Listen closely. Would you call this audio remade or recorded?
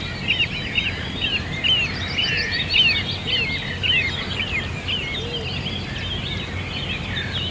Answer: recorded